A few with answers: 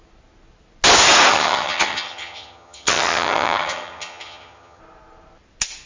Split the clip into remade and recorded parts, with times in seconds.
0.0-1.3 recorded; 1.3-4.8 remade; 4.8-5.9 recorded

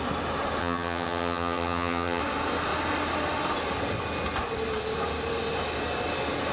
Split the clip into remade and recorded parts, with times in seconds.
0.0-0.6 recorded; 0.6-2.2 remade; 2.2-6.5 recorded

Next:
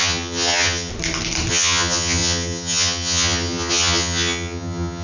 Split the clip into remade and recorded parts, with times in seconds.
0.0-0.9 remade; 0.9-1.5 recorded; 1.5-5.0 remade

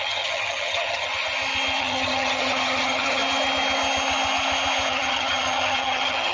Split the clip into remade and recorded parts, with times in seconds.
0.0-1.1 remade; 1.1-1.8 recorded; 1.8-3.2 remade; 3.2-4.9 recorded; 4.9-6.3 remade

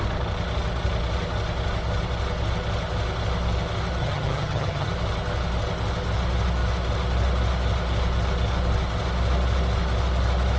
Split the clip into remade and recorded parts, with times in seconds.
0.0-4.0 recorded; 4.0-4.9 remade; 4.9-10.6 recorded

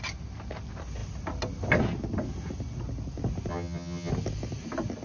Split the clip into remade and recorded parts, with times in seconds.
0.0-3.5 recorded; 3.5-4.1 remade; 4.1-5.0 recorded

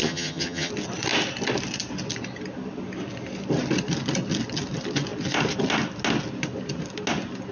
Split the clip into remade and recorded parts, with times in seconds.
0.0-0.7 remade; 0.7-7.5 recorded